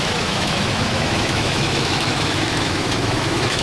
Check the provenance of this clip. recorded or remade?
remade